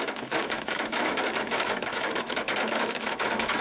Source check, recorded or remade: remade